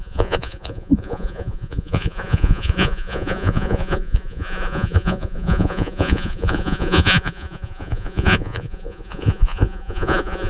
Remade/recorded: remade